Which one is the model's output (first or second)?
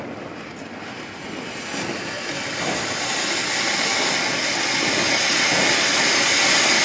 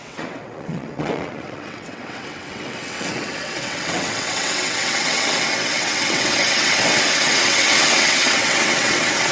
second